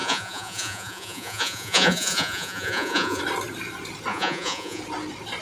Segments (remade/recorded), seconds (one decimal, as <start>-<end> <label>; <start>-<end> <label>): 0.0-3.2 remade; 3.2-4.1 recorded; 4.1-4.8 remade; 4.8-5.4 recorded